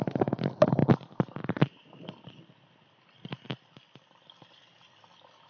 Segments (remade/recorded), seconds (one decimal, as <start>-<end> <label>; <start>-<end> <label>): 0.0-5.5 recorded